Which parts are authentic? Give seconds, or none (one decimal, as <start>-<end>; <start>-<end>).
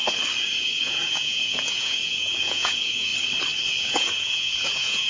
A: 0.0-0.6; 3.1-3.8